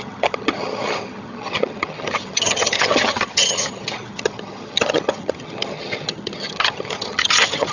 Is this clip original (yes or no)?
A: no